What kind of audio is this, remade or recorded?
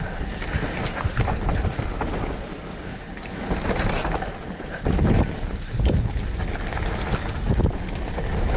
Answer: recorded